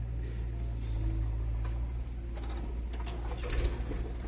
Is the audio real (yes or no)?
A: yes